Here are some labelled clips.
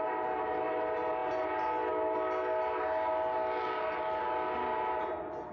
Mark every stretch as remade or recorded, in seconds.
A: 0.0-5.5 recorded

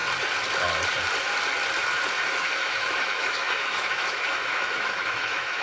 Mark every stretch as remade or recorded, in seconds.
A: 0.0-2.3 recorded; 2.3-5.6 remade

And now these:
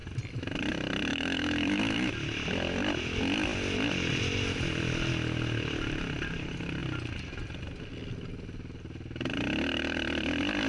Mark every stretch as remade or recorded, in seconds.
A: 0.0-1.1 recorded; 1.1-2.1 remade; 2.1-10.7 recorded

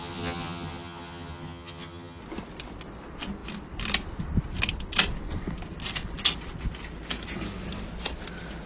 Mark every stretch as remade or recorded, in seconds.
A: 0.0-2.2 remade; 2.2-8.7 recorded

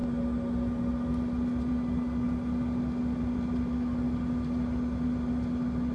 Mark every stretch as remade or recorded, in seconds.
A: 0.0-5.9 recorded

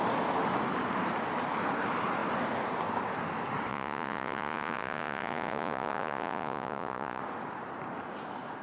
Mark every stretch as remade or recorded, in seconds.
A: 0.0-3.7 recorded; 3.7-7.2 remade; 7.2-8.6 recorded